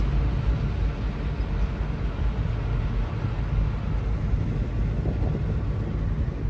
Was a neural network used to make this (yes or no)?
no